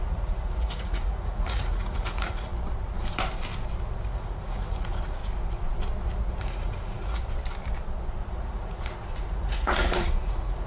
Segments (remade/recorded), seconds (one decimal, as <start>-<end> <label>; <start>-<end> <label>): 0.0-2.5 remade; 2.5-4.1 recorded; 4.1-5.2 remade; 5.2-6.4 recorded; 6.4-7.2 remade; 7.2-8.3 recorded; 8.3-10.7 remade